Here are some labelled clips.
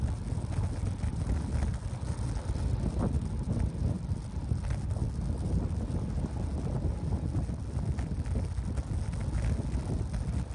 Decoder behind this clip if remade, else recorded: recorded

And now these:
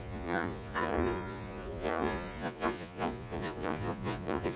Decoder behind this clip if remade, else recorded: remade, vocoder, Vocos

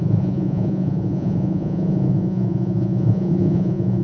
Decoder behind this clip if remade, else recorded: remade, vocoder, Vocos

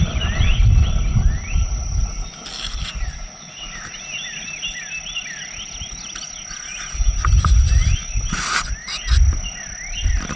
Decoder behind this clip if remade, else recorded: recorded